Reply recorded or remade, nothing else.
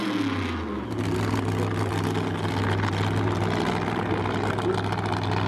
recorded